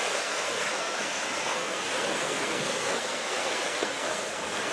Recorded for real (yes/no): no